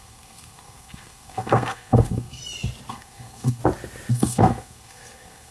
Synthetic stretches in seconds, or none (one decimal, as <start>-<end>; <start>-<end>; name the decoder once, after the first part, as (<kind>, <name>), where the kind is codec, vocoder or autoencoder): 0.0-2.4 (codec, SNAC); 2.9-3.6; 4.1-5.5